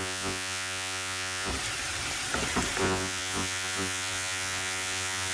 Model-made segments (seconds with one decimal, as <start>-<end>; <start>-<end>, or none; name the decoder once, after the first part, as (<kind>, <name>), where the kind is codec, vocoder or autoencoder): 0.0-1.5 (vocoder, Vocos); 2.8-5.3

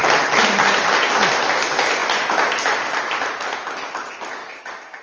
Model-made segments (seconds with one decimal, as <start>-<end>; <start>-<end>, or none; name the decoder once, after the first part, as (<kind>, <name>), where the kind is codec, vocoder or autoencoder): 4.4-5.0 (codec, DAC)

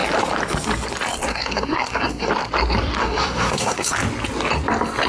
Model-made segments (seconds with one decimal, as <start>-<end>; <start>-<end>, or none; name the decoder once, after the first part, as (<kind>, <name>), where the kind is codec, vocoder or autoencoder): 1.3-2.3 (codec, SNAC); 3.0-3.9

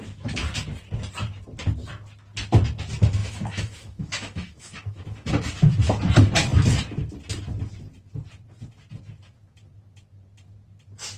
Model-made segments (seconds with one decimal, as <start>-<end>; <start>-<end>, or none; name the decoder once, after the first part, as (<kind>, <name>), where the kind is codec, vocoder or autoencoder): 3.2-5.3 (autoencoder, DAC-VAE)

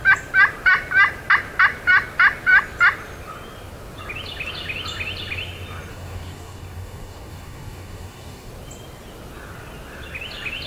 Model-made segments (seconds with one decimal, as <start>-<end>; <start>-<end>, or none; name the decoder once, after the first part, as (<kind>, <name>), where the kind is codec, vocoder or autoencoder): 5.9-8.5 (codec, DAC)

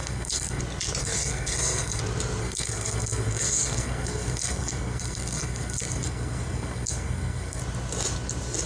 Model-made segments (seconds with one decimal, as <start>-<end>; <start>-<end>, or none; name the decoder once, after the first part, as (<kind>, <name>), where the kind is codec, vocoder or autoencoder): 0.0-0.6 (codec, SNAC); 1.0-2.0; 2.4-7.6